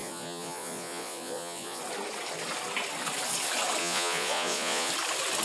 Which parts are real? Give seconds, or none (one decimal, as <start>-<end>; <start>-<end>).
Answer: 1.8-3.8; 4.9-5.4